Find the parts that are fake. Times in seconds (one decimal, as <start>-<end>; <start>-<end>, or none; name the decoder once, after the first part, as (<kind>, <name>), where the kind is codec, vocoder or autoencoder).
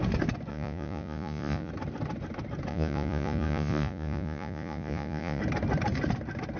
0.5-1.7 (vocoder, Vocos); 2.7-5.4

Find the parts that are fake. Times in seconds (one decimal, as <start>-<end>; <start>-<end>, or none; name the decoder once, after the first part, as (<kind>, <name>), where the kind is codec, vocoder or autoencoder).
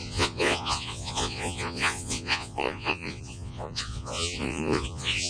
0.0-5.3 (vocoder, Vocos)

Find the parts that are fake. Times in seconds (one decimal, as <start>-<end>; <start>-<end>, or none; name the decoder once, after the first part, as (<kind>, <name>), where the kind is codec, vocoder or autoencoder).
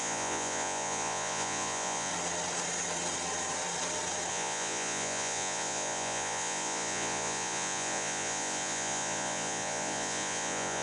0.0-2.1 (vocoder, Vocos); 4.3-10.8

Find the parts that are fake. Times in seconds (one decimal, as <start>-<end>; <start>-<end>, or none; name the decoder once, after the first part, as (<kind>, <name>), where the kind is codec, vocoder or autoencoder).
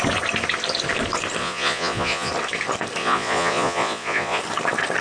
1.4-2.3 (vocoder, Vocos); 3.0-4.4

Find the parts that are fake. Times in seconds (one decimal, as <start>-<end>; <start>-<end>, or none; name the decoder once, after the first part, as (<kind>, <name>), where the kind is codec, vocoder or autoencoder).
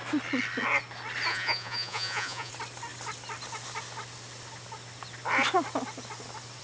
1.3-2.5 (vocoder, Vocos)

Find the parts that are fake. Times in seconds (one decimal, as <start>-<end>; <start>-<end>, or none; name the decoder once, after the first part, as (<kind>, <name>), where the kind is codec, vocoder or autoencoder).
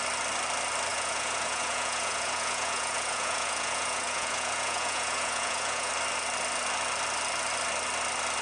0.9-5.9 (vocoder, Vocos)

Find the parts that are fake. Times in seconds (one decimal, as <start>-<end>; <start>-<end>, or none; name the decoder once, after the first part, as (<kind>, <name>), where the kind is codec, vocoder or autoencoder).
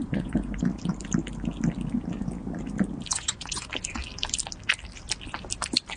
0.0-0.6 (vocoder, Vocos); 3.1-3.7